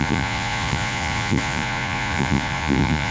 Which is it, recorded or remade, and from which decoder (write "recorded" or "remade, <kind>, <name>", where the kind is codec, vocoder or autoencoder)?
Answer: remade, vocoder, Vocos